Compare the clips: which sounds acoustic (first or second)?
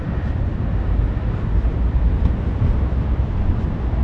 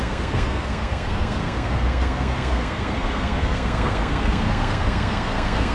first